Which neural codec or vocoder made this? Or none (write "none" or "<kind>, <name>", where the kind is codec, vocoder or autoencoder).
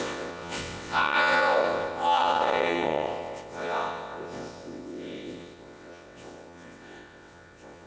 vocoder, WaveNeXt